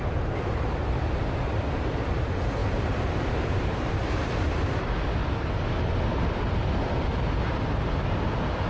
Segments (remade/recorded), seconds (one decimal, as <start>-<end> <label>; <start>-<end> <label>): 0.0-2.6 recorded; 2.6-3.9 remade; 3.9-5.2 recorded; 5.2-5.7 remade; 5.7-8.7 recorded